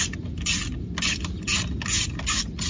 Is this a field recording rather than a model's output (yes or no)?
yes